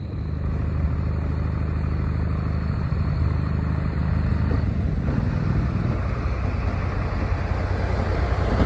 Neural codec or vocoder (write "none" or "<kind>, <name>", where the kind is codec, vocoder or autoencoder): none